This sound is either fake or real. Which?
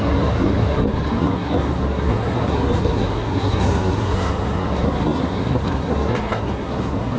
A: fake